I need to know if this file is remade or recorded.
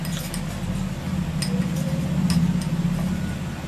recorded